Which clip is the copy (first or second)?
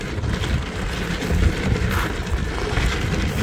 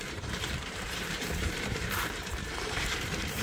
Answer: second